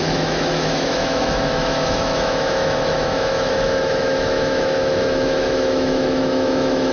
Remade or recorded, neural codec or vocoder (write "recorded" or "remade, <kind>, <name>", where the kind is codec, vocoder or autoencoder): remade, autoencoder, DAC-VAE